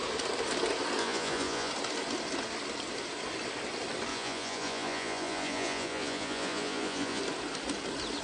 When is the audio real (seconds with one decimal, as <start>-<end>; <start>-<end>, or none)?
0.0-1.0; 1.7-4.1; 7.2-8.2

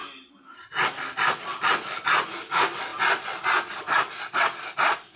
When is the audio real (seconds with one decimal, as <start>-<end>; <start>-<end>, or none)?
0.0-5.2

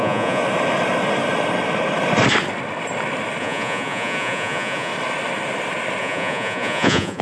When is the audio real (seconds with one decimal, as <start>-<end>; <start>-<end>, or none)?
0.4-3.4; 4.9-6.0

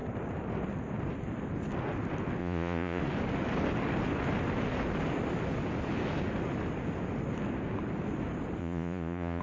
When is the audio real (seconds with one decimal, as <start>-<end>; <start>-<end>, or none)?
0.0-2.4; 3.0-8.6

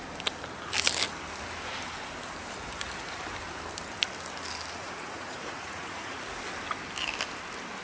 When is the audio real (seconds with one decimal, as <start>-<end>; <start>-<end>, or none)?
0.0-4.8; 6.2-7.8

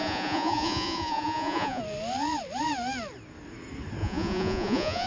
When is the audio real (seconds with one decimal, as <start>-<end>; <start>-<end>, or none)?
1.8-4.0

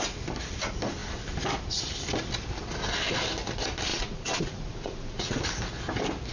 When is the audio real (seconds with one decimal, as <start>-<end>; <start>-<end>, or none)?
0.0-3.9; 5.4-6.3